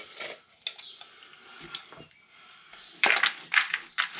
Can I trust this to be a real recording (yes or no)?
yes